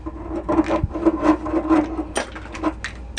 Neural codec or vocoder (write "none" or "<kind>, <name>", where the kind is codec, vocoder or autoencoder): none